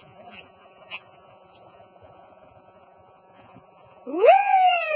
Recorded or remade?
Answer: remade